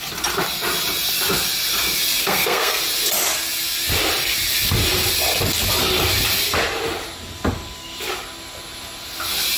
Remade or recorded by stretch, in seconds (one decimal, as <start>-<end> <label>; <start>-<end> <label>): 0.0-2.2 recorded; 2.2-2.8 remade; 2.8-9.6 recorded